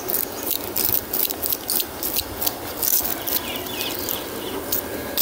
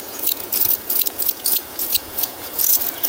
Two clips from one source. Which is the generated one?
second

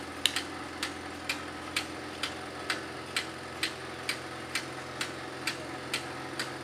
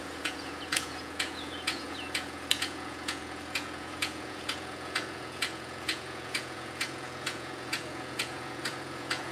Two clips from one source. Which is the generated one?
second